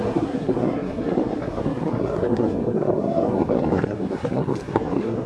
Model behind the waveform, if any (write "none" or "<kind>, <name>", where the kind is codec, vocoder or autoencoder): codec, SNAC